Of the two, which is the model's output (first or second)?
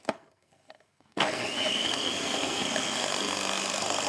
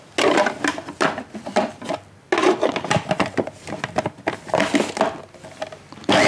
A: first